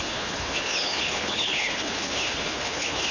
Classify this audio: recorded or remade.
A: remade